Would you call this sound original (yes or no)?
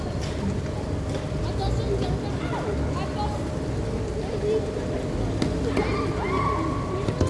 yes